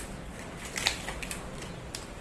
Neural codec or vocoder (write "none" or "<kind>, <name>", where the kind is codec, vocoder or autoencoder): none